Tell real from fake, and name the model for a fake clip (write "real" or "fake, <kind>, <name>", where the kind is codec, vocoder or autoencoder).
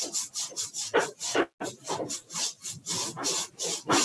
real